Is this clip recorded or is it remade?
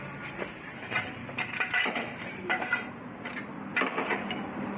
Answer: remade